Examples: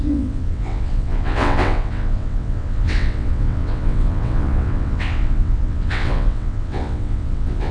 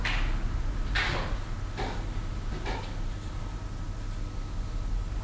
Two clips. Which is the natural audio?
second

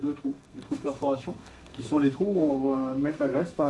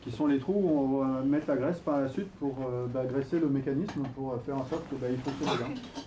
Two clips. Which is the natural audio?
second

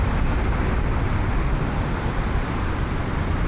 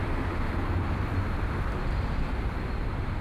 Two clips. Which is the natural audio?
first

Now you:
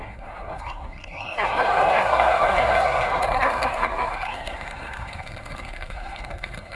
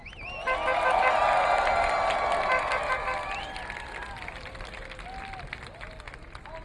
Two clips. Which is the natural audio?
second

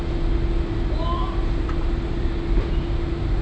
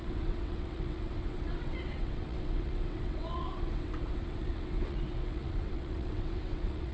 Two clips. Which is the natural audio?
first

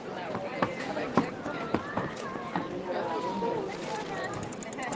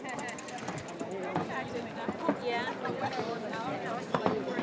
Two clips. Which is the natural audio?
second